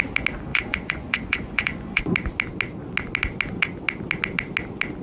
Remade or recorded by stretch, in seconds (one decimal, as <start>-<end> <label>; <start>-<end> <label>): 0.0-0.5 recorded; 0.5-2.0 remade; 2.0-5.0 recorded

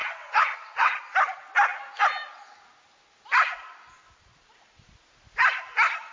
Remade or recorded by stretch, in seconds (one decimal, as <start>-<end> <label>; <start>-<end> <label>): 0.0-0.9 remade; 0.9-6.1 recorded

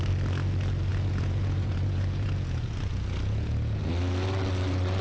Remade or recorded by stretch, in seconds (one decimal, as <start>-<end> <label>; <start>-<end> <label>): 0.0-0.9 recorded; 0.9-3.9 remade; 3.9-5.0 recorded

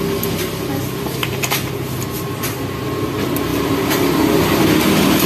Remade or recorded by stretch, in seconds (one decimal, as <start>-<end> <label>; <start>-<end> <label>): 0.0-1.2 recorded; 1.2-1.7 remade; 1.7-5.3 recorded

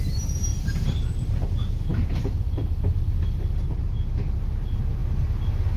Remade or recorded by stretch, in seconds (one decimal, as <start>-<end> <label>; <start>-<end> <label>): 0.0-0.5 recorded; 0.5-1.5 remade; 1.5-1.9 recorded; 1.9-3.8 remade; 3.8-5.8 recorded

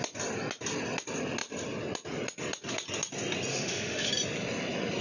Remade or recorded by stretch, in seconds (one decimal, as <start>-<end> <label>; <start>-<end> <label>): 0.0-3.5 recorded; 3.5-4.1 remade; 4.1-5.0 recorded

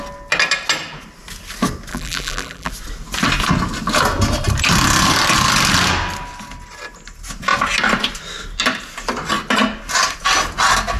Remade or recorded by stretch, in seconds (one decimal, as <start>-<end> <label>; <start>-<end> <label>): 0.0-1.9 recorded; 1.9-2.7 remade; 2.7-11.0 recorded